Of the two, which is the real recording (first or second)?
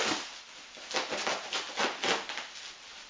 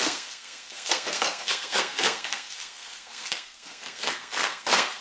first